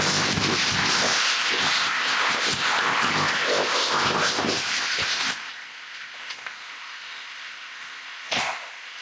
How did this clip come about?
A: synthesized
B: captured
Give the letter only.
A